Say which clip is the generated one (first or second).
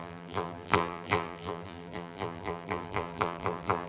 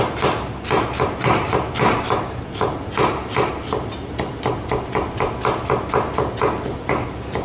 first